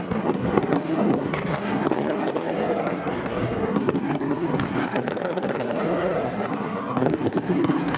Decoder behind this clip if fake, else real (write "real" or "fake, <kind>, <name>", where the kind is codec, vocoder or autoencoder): fake, codec, SNAC